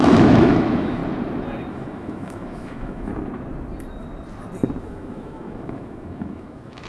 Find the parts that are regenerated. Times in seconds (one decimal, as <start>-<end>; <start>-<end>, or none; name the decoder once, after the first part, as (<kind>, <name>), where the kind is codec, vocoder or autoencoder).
0.0-1.0 (autoencoder, DAC-VAE); 1.7-3.1; 4.8-6.9